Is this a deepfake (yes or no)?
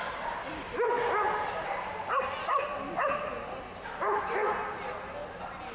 no